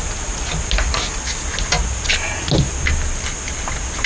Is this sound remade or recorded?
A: recorded